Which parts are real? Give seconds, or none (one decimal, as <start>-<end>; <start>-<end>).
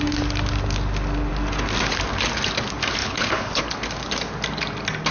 0.0-3.0; 3.6-5.1